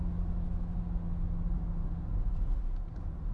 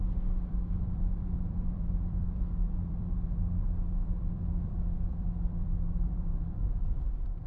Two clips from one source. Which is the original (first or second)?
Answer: first